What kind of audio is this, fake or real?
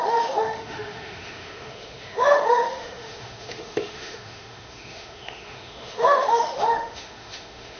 fake